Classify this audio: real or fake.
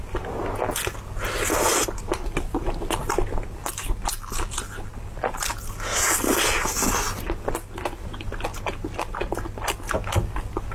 real